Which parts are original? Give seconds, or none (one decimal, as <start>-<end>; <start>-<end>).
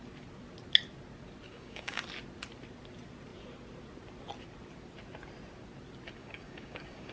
0.0-1.5; 2.0-6.2